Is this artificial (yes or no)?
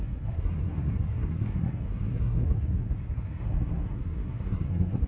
yes